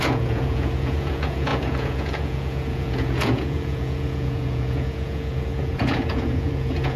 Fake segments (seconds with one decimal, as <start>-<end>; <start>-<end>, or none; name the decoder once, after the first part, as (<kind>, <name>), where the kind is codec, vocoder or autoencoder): 0.0-7.0 (vocoder, Vocos)